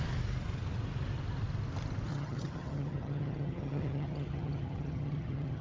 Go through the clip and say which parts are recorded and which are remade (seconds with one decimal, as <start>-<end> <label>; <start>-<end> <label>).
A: 0.0-2.1 recorded; 2.1-5.6 remade